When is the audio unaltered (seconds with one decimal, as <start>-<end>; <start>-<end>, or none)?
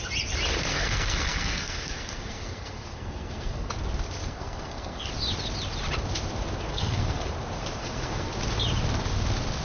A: 0.0-0.7; 3.7-4.2; 5.1-6.7; 7.3-7.8; 8.3-9.6